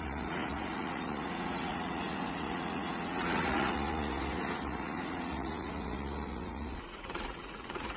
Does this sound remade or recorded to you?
remade